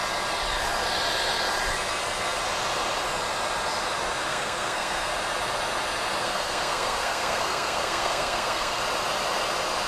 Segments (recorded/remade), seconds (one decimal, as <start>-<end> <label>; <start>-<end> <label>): 0.0-4.3 recorded; 4.3-5.1 remade; 5.1-6.2 recorded; 6.2-8.8 remade; 8.8-9.9 recorded